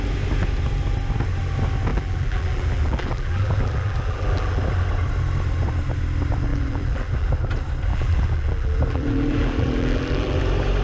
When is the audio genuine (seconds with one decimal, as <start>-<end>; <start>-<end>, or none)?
0.0-1.9; 4.6-6.5; 7.4-7.9; 10.4-10.8